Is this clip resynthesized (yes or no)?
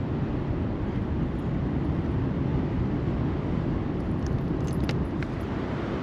yes